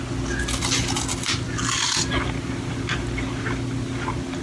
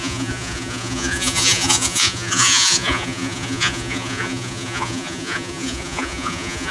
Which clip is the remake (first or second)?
second